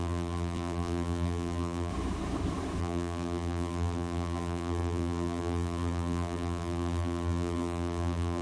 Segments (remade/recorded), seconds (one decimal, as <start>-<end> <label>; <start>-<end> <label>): 0.0-1.9 remade; 1.9-2.8 recorded; 2.8-8.4 remade